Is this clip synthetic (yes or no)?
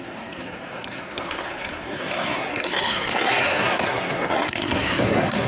yes